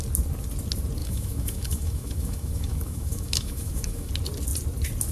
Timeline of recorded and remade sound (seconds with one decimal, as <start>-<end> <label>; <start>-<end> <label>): 0.0-1.0 recorded; 1.0-4.1 remade; 4.1-5.1 recorded